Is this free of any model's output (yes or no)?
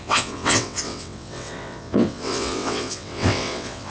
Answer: no